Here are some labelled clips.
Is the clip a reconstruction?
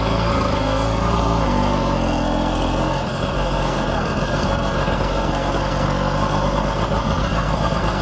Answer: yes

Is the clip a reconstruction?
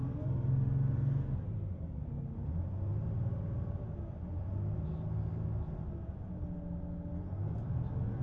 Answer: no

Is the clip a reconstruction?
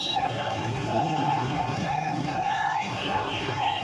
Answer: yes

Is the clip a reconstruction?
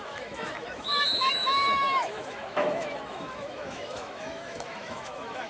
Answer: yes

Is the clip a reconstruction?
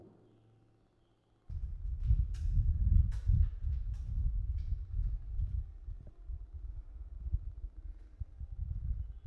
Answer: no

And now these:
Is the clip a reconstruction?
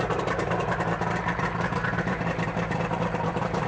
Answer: yes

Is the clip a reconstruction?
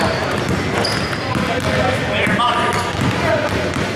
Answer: no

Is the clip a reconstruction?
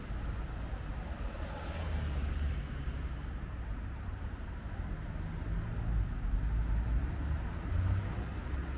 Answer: no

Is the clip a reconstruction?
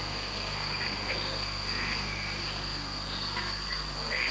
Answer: yes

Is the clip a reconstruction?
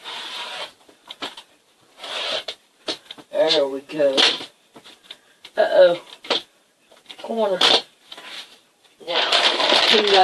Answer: yes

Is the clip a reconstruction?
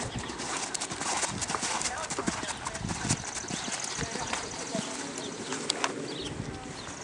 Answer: no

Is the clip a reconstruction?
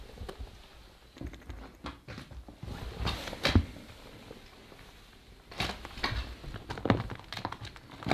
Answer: no